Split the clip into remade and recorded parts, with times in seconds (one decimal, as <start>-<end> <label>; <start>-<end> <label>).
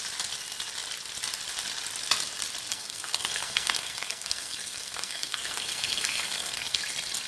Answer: 0.0-2.7 recorded; 2.7-6.8 remade; 6.8-7.3 recorded